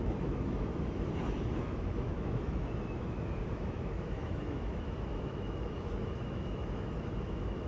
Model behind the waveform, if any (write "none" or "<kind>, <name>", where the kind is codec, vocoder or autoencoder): autoencoder, DAC-VAE